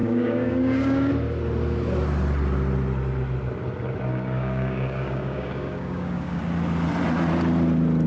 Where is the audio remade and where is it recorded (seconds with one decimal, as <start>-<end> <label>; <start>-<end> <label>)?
0.0-1.1 remade; 1.1-4.1 recorded; 4.1-6.4 remade; 6.4-8.1 recorded